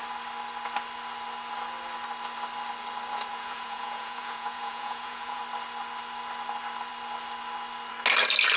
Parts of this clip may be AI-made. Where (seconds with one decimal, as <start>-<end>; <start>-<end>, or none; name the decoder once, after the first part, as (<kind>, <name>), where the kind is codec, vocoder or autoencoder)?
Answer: 3.3-5.4 (vocoder, Vocos)